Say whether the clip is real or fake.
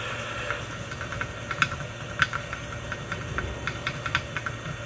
real